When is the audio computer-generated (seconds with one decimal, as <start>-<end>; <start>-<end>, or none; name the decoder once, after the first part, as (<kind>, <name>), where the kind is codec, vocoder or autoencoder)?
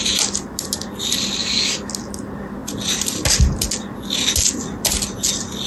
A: 1.4-1.9 (codec, DAC)